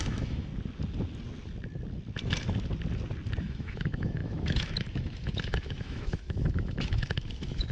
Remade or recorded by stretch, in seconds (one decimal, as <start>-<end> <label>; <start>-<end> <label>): 0.0-0.5 remade; 0.5-3.4 recorded; 3.4-7.7 remade

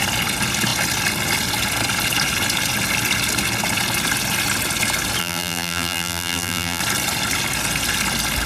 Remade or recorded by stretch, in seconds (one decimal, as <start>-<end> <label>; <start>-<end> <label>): 0.0-5.2 recorded; 5.2-6.8 remade; 6.8-8.5 recorded

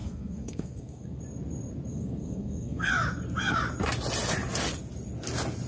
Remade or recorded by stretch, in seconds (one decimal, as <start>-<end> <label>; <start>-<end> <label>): 0.0-1.2 remade; 1.2-1.9 recorded; 1.9-2.9 remade; 2.9-5.7 recorded

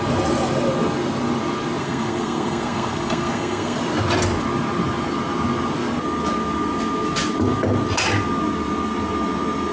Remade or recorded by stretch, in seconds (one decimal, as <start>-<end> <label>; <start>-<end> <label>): 0.0-1.8 recorded; 1.8-3.8 remade; 3.8-9.7 recorded

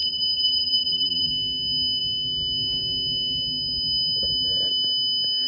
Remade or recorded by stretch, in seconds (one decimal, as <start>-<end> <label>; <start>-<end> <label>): 0.0-1.3 remade; 1.3-5.5 recorded

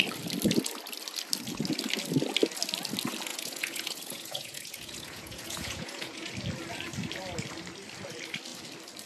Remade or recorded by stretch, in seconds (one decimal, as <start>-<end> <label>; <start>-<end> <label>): 0.0-3.3 recorded; 3.3-6.3 remade; 6.3-9.1 recorded

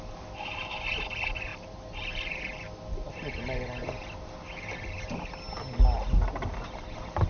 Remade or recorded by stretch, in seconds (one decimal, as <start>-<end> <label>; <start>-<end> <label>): 0.0-1.5 recorded; 1.5-2.4 remade; 2.4-7.3 recorded